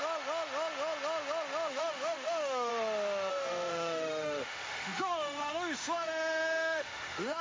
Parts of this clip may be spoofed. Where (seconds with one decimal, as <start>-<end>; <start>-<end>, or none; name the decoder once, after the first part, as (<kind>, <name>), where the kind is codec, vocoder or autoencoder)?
1.7-2.7 (autoencoder, DAC-VAE); 3.3-7.4